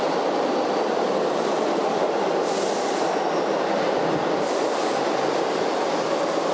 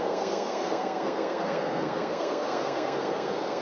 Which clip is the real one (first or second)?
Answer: first